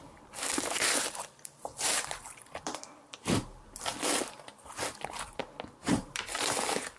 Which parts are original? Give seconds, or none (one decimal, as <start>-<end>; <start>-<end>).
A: 3.9-5.4